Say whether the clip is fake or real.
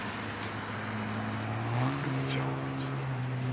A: real